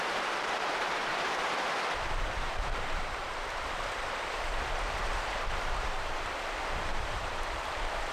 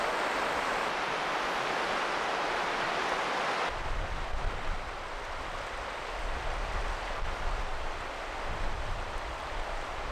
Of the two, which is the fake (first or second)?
first